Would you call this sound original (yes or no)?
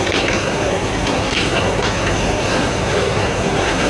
no